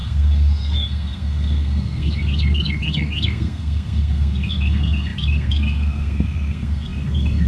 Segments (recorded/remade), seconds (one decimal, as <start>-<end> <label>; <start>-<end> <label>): 0.0-7.5 remade